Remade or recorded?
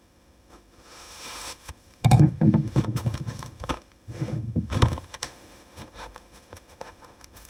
remade